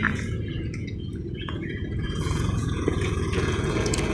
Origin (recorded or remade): remade